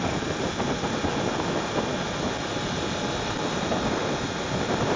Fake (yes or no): no